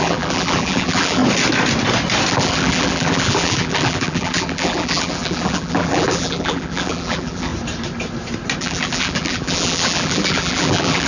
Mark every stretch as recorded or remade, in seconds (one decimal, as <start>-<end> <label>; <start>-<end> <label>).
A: 0.0-1.2 remade; 1.2-2.3 recorded; 2.3-7.5 remade; 7.5-8.6 recorded; 8.6-11.1 remade